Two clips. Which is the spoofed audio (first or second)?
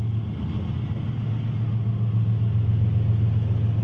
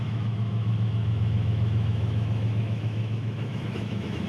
second